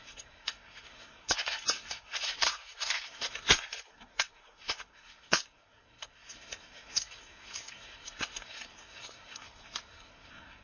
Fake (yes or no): yes